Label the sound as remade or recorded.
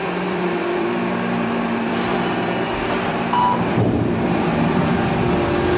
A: remade